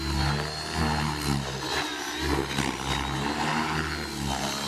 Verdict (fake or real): real